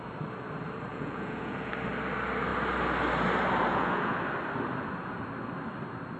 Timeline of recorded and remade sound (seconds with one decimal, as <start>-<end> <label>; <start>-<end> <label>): 0.0-0.9 recorded; 0.9-1.7 remade; 1.7-3.7 recorded; 3.7-4.2 remade; 4.2-6.2 recorded